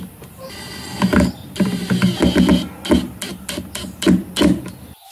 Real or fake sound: real